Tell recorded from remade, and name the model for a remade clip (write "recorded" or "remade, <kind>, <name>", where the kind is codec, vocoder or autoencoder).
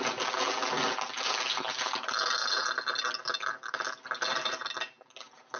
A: recorded